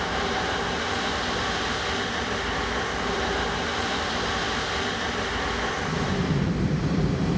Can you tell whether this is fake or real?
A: fake